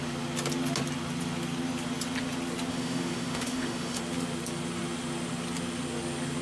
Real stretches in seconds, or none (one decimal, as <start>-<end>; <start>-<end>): 0.0-2.7; 4.0-6.4